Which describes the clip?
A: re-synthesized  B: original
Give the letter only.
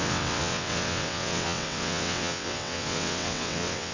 A